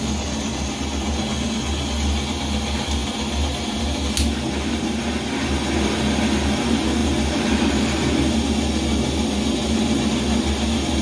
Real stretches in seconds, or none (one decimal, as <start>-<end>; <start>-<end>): 0.0-11.0